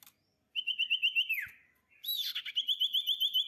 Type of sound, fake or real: real